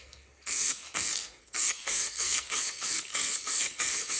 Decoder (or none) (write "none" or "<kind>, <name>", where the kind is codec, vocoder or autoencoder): codec, SNAC